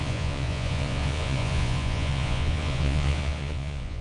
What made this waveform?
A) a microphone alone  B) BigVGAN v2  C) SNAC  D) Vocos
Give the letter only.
D